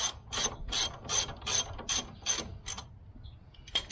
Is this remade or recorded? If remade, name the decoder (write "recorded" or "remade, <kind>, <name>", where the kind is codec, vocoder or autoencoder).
recorded